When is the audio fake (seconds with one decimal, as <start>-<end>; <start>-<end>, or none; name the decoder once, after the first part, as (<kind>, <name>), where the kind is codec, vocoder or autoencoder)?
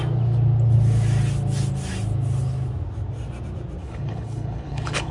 3.8-5.1 (codec, HILCodec)